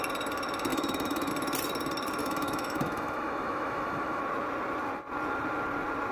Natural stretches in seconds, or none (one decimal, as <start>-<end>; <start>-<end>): 0.0-0.7; 1.3-2.2; 4.2-6.1